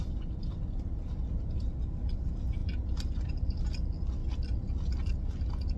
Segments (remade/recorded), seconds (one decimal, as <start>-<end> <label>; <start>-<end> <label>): 0.0-5.8 recorded